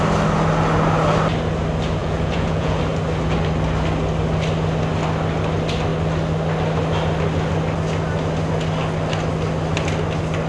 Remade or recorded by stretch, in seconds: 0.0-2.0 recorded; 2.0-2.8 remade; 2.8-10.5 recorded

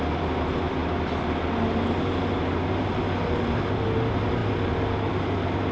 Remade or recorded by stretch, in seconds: 0.0-5.7 recorded